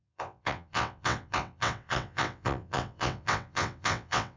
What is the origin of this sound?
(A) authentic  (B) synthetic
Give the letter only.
B